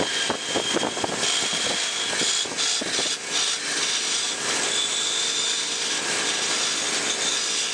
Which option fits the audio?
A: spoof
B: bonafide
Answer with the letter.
B